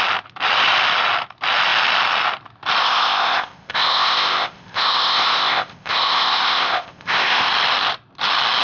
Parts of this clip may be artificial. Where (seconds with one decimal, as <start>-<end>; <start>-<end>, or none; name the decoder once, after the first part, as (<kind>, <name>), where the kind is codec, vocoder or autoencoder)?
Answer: 2.8-7.5 (codec, ZipCodec)